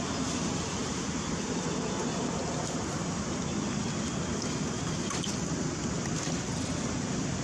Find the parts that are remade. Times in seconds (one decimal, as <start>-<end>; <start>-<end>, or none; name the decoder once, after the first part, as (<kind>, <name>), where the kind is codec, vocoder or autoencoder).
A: none